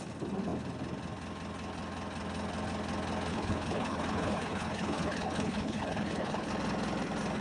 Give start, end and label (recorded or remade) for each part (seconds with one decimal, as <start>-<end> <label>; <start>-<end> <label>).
0.0-3.3 recorded; 3.3-6.5 remade; 6.5-7.4 recorded